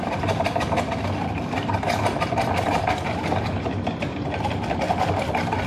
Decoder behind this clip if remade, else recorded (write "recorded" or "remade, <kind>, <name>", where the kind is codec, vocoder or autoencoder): remade, vocoder, BigVGAN v2